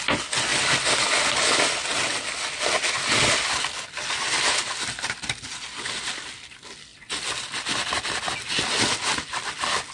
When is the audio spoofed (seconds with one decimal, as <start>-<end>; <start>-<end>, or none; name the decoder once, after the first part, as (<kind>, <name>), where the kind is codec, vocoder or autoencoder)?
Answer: none

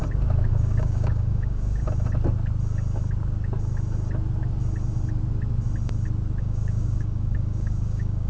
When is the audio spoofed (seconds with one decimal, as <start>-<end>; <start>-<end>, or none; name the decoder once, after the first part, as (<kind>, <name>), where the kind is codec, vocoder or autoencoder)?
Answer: 0.5-1.8 (codec, DAC); 6.4-8.3